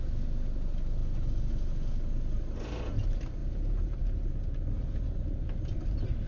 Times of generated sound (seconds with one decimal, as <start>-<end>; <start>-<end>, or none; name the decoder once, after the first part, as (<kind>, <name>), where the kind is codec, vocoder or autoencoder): 3.4-4.3 (vocoder, Vocos)